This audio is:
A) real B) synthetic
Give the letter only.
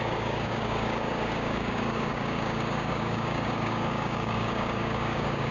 B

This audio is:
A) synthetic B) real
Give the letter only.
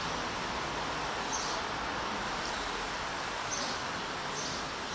B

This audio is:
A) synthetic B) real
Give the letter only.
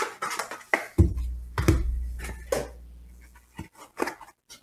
B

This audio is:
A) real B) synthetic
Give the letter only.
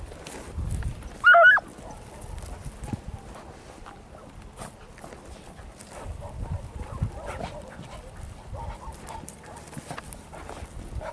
A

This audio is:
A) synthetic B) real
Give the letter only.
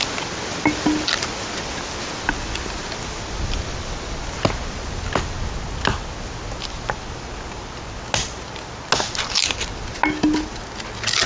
B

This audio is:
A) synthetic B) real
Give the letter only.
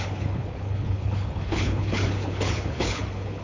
A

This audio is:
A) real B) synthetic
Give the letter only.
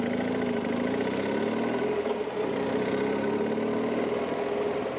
A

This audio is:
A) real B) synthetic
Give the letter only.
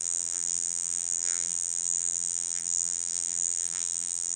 B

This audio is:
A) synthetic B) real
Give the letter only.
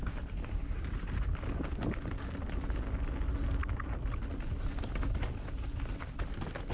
B